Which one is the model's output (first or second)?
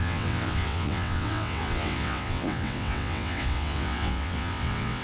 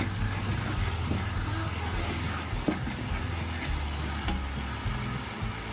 first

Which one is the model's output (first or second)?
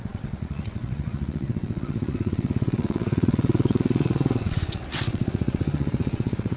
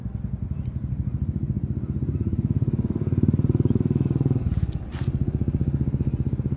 first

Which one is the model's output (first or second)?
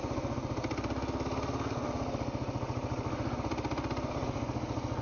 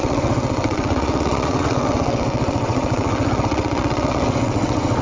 second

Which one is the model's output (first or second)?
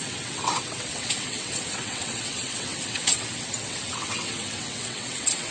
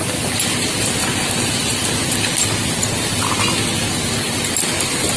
first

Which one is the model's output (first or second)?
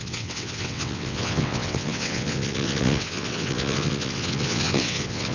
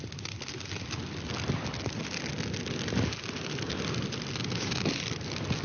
first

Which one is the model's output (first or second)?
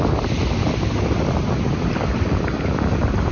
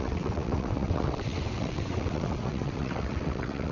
second